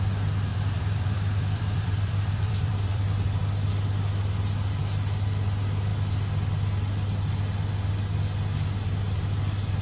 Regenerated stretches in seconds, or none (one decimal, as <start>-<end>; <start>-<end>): 0.5-3.4